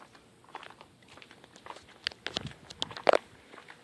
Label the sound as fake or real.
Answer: real